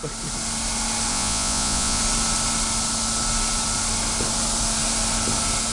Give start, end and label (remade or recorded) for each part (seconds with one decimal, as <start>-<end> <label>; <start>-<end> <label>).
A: 0.0-1.1 recorded; 1.1-2.0 remade; 2.0-5.7 recorded